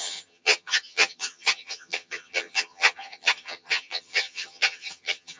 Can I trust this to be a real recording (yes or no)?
no